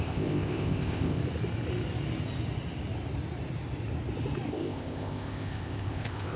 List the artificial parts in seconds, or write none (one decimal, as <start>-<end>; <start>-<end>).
0.0-1.2; 4.5-6.4